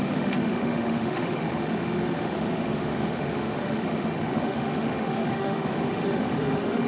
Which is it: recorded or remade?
remade